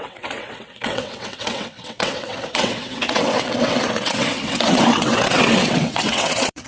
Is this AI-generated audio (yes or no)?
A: yes